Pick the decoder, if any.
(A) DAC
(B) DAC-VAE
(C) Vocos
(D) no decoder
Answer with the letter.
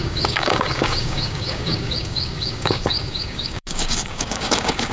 A